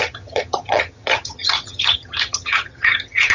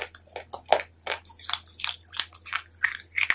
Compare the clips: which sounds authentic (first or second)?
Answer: second